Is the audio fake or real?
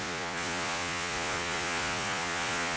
fake